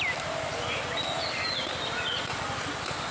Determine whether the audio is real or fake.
real